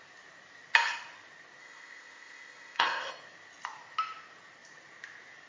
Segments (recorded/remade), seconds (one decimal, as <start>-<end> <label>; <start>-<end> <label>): 0.0-1.6 recorded; 1.6-3.1 remade; 3.1-5.5 recorded